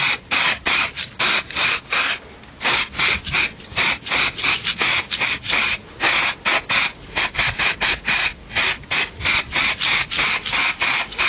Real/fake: fake